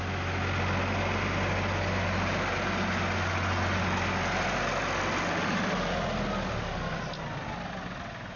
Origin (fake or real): real